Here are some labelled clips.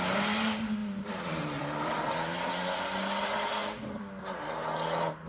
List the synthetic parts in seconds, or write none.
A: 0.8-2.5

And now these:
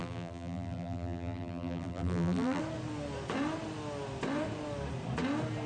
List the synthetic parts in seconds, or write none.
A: 0.0-2.6